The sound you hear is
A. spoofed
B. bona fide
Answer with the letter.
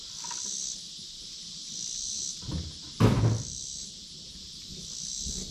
B